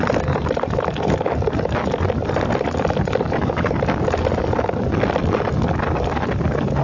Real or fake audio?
real